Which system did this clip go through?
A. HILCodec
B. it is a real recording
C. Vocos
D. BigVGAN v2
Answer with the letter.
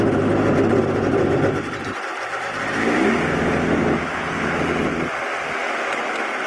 B